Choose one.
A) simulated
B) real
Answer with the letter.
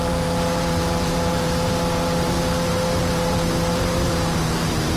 A